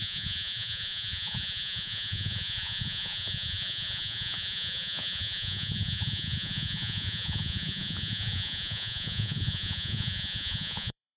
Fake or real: fake